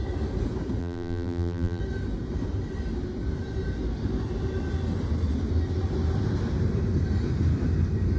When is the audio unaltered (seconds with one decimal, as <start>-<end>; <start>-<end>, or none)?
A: 0.0-0.8; 1.8-8.2